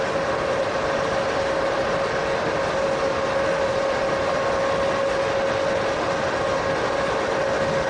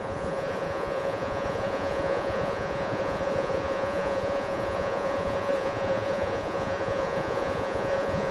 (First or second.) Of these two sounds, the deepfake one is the second